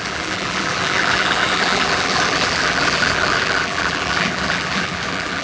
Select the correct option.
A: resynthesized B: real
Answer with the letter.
A